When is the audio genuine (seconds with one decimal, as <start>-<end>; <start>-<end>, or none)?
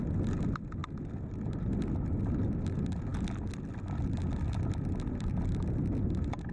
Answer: 0.0-6.5